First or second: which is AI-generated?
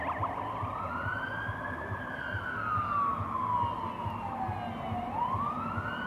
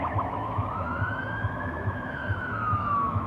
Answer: second